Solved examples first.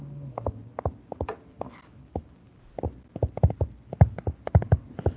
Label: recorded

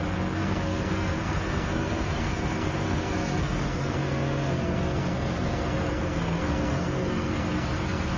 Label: remade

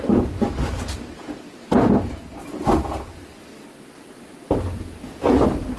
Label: recorded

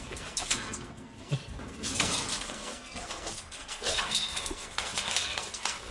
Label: remade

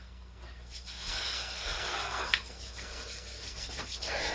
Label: remade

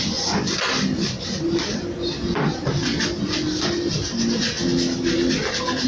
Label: recorded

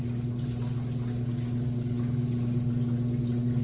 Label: recorded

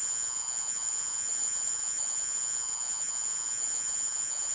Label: remade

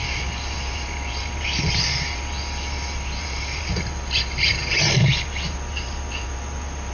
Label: recorded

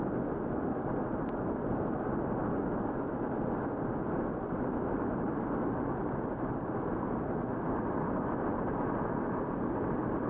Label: recorded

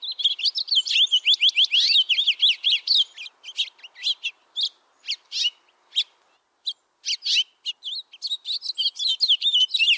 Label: recorded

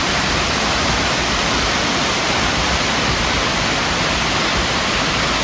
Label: recorded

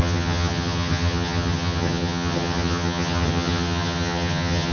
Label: remade